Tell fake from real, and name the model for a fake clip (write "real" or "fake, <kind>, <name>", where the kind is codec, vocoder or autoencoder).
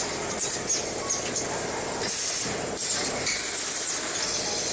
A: real